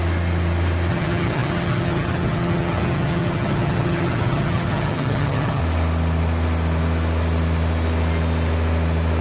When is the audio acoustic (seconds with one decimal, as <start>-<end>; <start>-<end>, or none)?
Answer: 0.0-0.9; 5.6-9.2